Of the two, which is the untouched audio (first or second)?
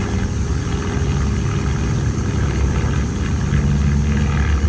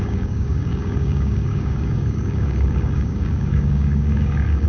first